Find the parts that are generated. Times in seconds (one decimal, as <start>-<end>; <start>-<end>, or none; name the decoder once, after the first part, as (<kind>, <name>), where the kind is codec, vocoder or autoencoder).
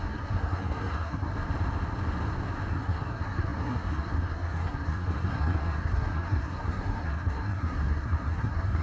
0.0-1.3 (codec, SNAC); 2.7-8.8